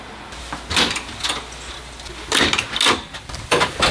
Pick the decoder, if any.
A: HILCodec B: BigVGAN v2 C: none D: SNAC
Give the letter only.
C